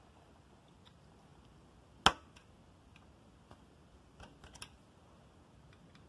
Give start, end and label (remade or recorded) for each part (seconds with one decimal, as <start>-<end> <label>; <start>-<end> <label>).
0.0-6.1 recorded